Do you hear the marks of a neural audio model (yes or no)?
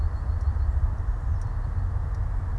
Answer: no